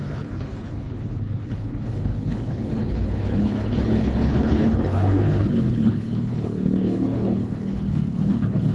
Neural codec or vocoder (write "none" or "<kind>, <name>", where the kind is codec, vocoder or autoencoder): codec, HILCodec